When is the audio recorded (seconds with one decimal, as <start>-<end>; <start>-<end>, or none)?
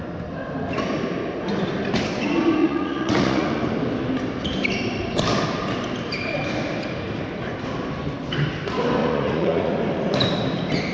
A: 0.0-2.6; 3.6-9.0; 9.7-10.9